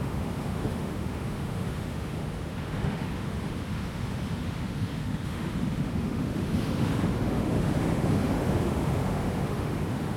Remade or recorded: remade